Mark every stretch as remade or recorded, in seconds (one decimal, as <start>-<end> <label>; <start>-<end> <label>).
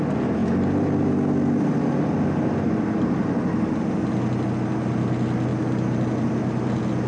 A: 0.0-7.1 recorded